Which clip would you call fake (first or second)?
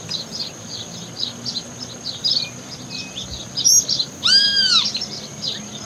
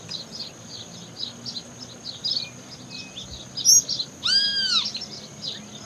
first